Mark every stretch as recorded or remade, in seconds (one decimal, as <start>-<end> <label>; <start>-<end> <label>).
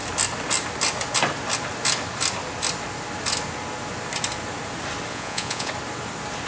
0.0-5.1 recorded; 5.1-5.7 remade; 5.7-6.5 recorded